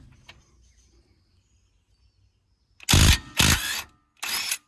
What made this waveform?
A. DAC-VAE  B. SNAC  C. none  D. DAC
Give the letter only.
C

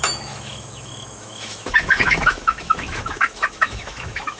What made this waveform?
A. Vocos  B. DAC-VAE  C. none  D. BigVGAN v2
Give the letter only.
B